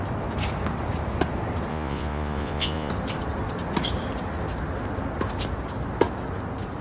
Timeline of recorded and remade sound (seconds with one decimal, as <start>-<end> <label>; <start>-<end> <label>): 0.0-1.7 recorded; 1.7-2.9 remade; 2.9-6.8 recorded